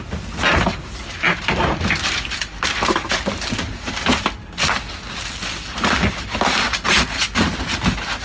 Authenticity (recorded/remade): recorded